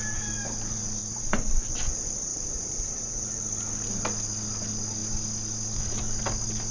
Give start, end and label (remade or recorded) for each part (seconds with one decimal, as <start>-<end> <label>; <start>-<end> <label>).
0.0-1.0 recorded; 1.0-1.7 remade; 1.7-2.3 recorded; 2.3-3.4 remade; 3.4-6.7 recorded